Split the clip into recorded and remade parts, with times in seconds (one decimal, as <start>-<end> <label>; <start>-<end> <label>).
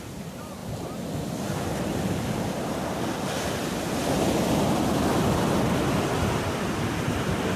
0.0-7.6 recorded